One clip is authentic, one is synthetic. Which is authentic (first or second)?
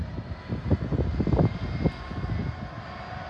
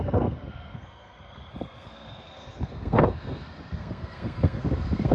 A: first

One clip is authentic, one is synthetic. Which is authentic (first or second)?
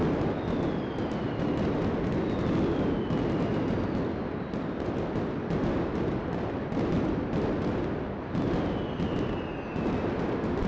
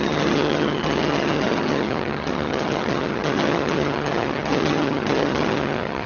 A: first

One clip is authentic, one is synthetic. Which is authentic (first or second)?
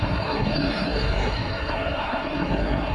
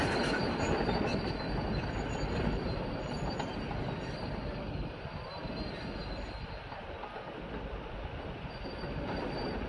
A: second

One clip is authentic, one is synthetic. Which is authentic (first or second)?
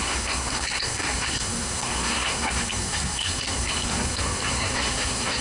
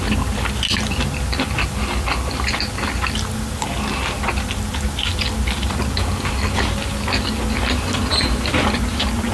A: second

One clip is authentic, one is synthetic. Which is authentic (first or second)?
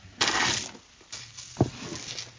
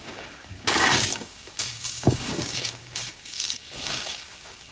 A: first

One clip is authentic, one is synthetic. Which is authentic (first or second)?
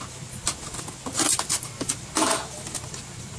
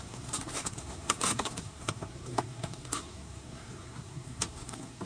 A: first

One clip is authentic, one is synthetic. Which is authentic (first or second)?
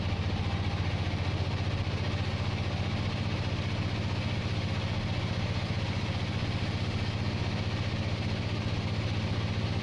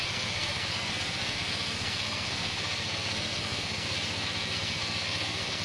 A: first